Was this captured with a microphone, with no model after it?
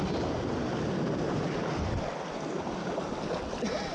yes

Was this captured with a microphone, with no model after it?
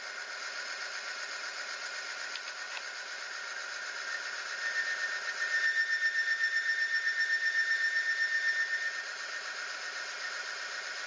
yes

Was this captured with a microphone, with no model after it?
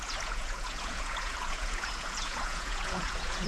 no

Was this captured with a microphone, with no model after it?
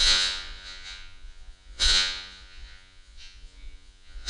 no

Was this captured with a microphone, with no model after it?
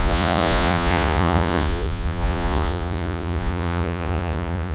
no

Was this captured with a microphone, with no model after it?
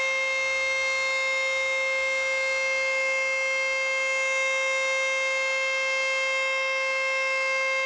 yes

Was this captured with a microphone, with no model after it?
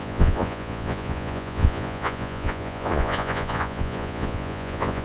no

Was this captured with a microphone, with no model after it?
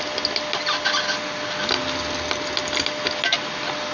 yes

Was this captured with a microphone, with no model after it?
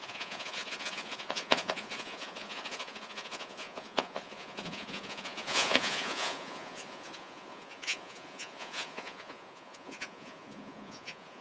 no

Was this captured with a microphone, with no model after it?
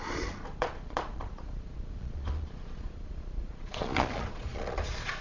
no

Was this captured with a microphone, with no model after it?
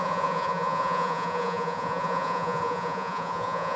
no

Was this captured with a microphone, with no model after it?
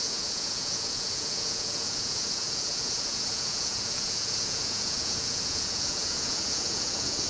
no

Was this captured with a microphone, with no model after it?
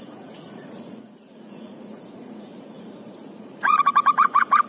no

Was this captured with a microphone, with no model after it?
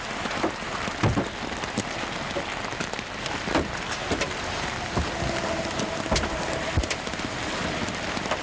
yes